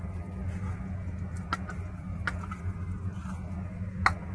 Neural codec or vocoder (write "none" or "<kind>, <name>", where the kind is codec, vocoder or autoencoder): none